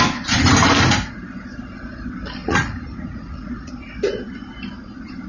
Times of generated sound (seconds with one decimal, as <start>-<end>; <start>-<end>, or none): 2.4-3.7